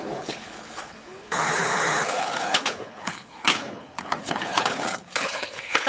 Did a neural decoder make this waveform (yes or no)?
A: yes